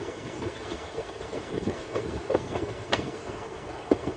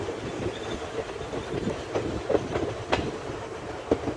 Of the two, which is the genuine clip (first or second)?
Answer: second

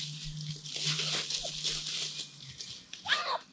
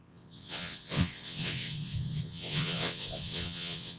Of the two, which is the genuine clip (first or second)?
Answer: first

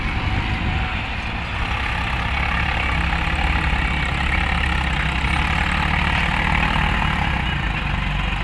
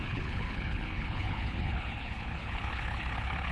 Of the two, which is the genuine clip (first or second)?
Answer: first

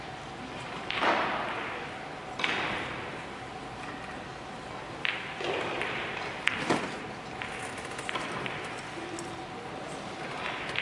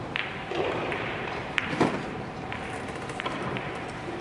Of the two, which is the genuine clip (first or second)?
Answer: first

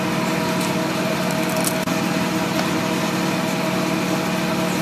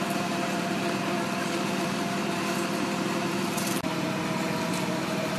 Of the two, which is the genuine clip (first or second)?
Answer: first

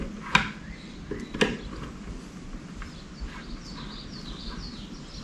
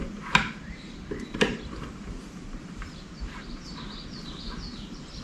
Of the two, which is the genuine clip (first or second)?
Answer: first